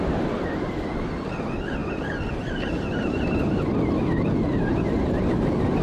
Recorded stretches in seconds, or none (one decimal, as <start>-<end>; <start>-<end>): 0.0-5.8